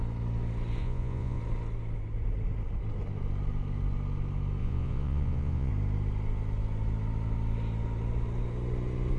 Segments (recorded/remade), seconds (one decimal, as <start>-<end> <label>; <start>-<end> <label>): 0.0-0.8 recorded; 0.8-1.4 remade; 1.4-4.6 recorded; 4.6-5.7 remade; 5.7-9.2 recorded